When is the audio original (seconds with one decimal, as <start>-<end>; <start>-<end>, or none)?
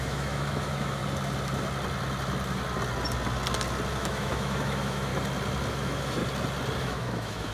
1.0-3.9; 5.1-5.7; 6.2-6.8